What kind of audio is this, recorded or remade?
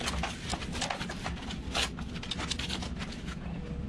recorded